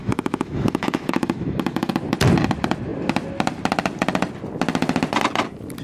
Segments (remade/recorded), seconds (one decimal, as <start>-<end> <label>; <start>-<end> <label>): 0.0-1.9 remade; 1.9-5.8 recorded